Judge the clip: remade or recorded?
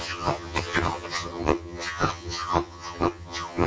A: remade